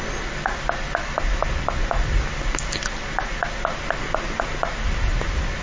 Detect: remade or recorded recorded